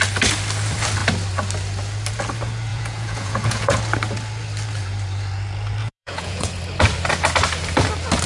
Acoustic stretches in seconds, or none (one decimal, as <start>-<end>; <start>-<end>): 0.0-2.7; 3.8-5.8; 6.5-8.3